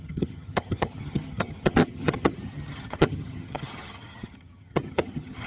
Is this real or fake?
fake